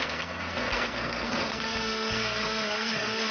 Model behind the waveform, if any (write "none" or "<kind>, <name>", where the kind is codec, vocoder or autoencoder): codec, SNAC